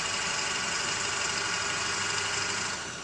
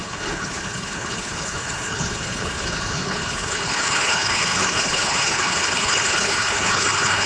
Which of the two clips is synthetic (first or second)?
second